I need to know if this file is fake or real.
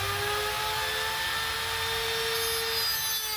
real